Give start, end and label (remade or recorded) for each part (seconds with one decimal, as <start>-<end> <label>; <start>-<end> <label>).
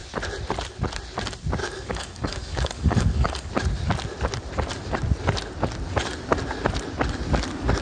0.0-1.6 recorded; 1.6-3.5 remade; 3.5-7.8 recorded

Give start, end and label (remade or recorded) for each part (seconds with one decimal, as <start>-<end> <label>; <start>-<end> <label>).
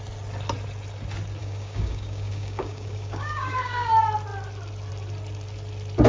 0.0-1.4 recorded; 1.4-3.9 remade; 3.9-6.1 recorded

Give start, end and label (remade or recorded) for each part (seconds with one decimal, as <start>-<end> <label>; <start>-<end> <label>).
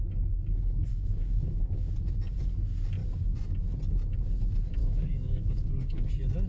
0.0-0.9 recorded; 0.9-1.9 remade; 1.9-4.8 recorded; 4.8-6.1 remade; 6.1-6.5 recorded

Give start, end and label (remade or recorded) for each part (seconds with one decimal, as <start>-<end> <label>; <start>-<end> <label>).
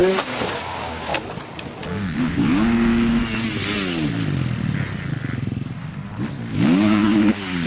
0.0-1.1 remade; 1.1-1.9 recorded; 1.9-3.2 remade; 3.2-6.5 recorded; 6.5-7.7 remade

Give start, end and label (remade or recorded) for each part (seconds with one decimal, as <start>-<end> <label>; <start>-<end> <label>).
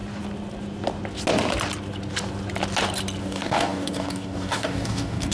0.0-3.2 recorded; 3.2-5.3 remade